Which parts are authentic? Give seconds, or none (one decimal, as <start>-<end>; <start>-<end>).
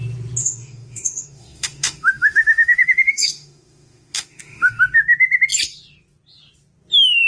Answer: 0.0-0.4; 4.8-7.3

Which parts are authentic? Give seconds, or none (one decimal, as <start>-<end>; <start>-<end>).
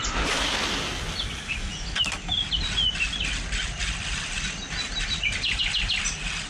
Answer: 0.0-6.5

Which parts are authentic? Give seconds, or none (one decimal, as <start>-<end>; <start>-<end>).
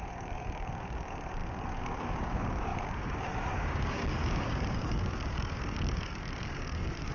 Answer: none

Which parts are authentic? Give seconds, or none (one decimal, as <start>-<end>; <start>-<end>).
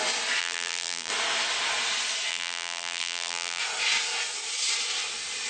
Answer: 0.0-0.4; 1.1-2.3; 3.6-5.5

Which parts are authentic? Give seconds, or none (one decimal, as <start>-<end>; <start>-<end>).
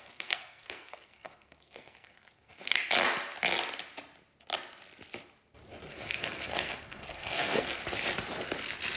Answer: 2.8-5.9; 7.8-9.0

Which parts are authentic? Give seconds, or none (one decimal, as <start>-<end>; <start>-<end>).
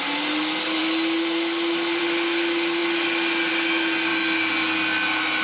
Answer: 0.0-5.4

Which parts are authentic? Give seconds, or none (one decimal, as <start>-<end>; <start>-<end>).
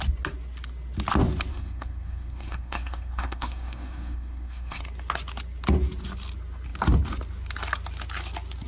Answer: 0.0-1.5; 4.8-8.7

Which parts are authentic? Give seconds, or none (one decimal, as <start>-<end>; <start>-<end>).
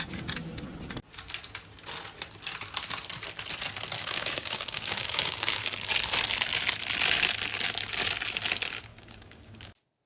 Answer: 0.0-4.0; 5.6-8.9; 9.7-10.1